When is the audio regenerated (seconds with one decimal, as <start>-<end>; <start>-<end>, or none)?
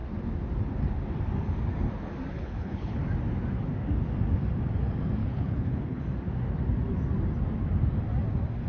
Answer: 2.3-3.0; 5.2-6.0